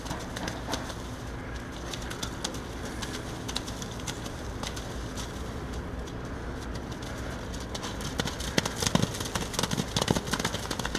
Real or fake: real